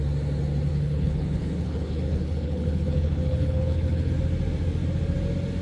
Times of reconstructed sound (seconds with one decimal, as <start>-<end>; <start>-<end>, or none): 0.7-4.1